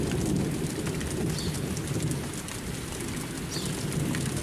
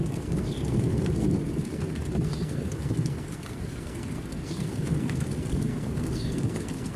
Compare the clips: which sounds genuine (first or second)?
first